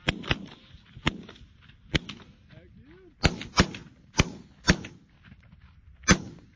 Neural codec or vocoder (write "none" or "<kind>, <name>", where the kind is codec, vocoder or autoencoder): none